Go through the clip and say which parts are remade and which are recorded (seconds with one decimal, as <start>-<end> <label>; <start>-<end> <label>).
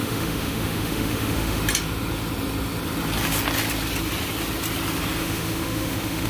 0.0-1.6 remade; 1.6-5.2 recorded; 5.2-6.3 remade